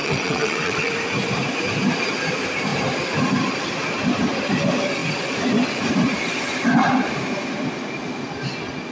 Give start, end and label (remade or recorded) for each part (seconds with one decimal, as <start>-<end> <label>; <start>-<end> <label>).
0.0-0.9 remade; 0.9-8.9 recorded